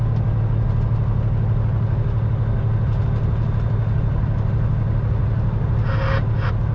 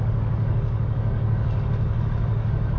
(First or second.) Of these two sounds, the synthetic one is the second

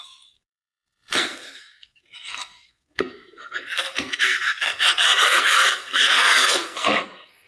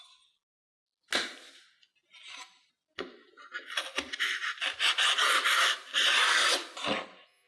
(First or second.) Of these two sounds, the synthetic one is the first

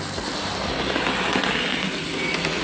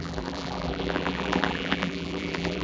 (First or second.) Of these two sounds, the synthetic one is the second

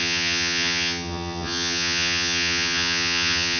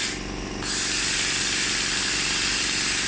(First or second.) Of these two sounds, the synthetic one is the first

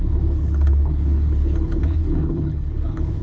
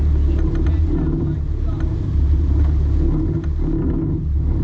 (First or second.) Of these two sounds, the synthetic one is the first